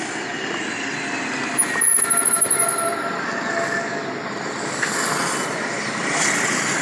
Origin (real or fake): real